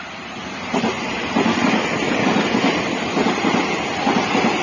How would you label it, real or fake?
fake